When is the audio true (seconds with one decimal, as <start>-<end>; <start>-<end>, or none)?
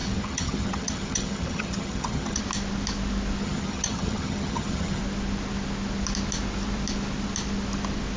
2.4-3.4; 5.0-8.2